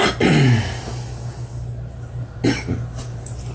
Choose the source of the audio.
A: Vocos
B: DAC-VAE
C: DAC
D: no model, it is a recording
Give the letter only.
D